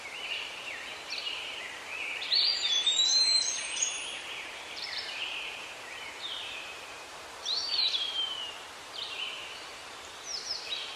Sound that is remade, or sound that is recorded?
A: remade